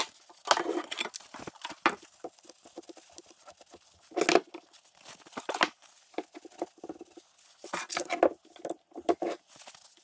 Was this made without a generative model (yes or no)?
yes